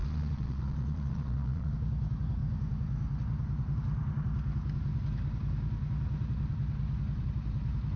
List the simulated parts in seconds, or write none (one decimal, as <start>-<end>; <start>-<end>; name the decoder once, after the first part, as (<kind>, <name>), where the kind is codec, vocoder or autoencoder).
0.0-1.7 (vocoder, Vocos)